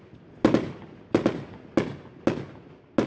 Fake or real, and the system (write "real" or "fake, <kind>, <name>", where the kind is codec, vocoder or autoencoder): real